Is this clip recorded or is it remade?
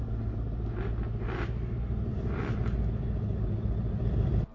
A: recorded